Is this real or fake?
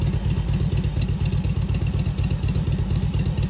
real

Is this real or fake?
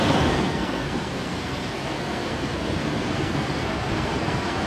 fake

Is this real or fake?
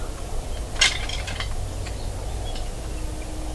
real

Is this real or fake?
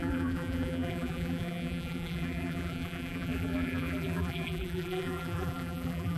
fake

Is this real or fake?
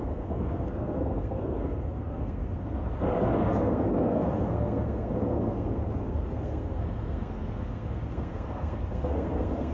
fake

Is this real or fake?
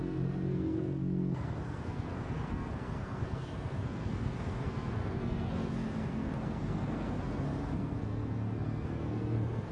fake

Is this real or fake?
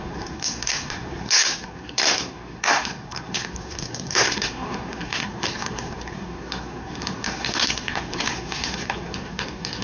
fake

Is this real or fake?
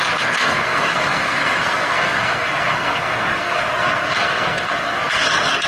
fake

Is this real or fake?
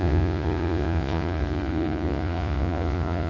fake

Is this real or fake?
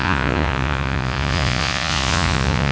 fake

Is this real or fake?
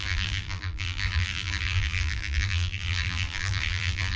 fake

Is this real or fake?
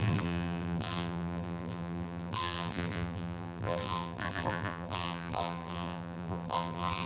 fake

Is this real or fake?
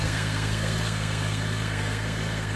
fake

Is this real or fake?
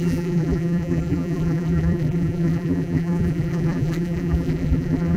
fake